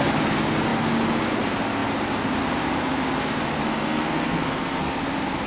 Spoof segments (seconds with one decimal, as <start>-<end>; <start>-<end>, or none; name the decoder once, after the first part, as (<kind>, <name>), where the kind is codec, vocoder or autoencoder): 3.6-5.0 (codec, SNAC)